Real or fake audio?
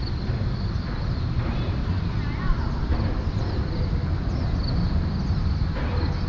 real